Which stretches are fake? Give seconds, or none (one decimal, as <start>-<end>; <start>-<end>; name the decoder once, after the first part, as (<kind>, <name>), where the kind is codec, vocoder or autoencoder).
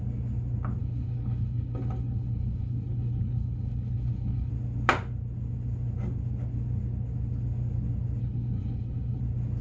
0.8-4.5 (codec, HILCodec); 8.2-9.2